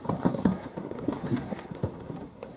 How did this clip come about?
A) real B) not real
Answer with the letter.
B